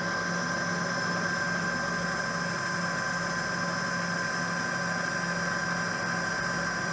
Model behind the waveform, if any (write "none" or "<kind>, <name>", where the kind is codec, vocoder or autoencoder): none